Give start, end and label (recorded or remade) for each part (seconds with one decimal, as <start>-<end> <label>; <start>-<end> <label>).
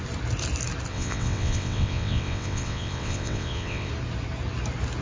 0.0-0.9 recorded; 0.9-3.9 remade; 3.9-5.0 recorded